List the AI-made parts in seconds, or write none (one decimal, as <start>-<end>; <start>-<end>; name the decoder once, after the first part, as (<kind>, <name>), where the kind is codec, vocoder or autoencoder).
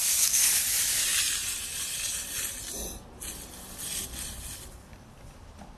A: 0.0-0.5 (codec, SNAC)